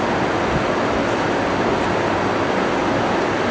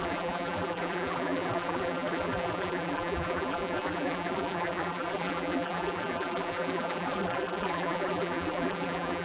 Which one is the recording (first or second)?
first